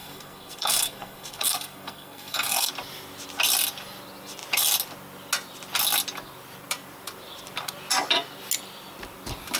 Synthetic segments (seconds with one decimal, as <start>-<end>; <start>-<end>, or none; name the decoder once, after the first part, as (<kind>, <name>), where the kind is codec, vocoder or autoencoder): 0.0-2.7 (codec, SNAC)